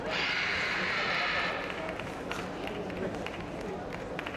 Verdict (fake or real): real